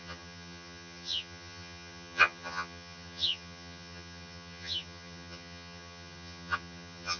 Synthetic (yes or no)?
yes